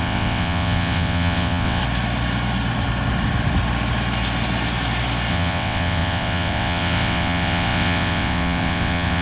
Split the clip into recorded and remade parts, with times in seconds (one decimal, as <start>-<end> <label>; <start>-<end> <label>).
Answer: 0.0-1.8 remade; 1.8-5.3 recorded; 5.3-9.2 remade